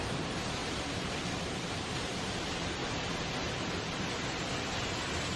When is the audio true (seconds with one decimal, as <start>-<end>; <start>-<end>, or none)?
2.8-5.0